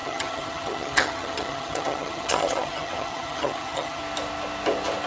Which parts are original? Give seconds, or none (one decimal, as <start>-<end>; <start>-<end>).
4.0-5.1

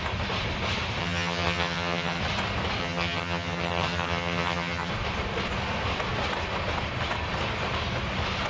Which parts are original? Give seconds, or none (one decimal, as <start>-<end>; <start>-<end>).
0.0-1.0; 2.2-2.8; 4.9-8.5

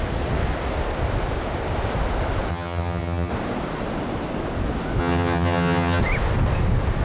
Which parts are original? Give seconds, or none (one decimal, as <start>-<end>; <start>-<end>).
0.0-2.5; 3.3-5.0; 6.0-7.0

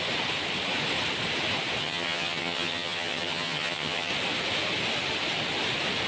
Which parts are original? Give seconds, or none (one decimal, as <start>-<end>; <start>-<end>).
0.0-1.8; 4.1-6.1

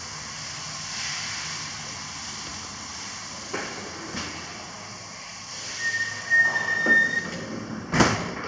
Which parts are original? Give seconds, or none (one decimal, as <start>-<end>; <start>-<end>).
0.0-8.5

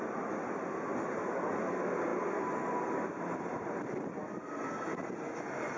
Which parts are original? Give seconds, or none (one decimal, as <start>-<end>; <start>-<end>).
0.0-5.8

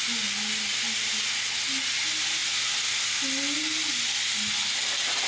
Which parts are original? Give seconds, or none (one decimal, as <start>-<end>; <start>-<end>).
0.0-5.3